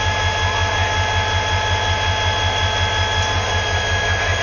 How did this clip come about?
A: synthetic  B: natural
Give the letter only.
B